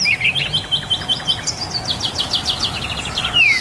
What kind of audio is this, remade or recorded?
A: recorded